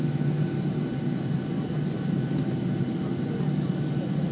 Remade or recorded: recorded